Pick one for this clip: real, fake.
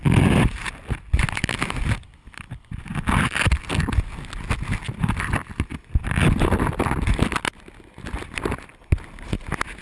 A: real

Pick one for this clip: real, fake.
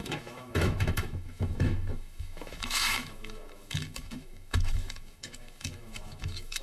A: fake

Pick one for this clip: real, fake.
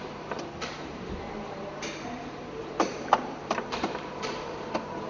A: fake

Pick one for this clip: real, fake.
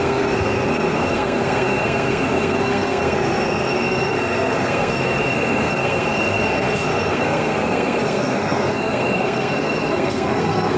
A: fake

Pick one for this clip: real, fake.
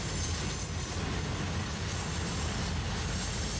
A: real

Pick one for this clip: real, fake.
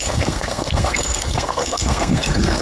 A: fake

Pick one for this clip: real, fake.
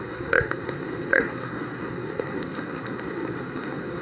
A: fake